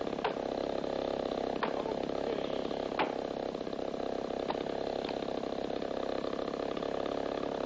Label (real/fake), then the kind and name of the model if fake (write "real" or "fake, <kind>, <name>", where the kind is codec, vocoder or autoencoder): real